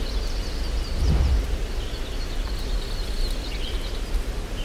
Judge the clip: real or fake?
real